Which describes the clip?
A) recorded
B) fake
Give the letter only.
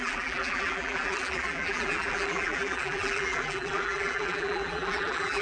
B